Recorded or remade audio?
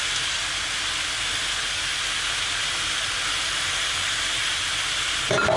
recorded